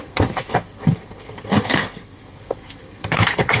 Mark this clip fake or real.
fake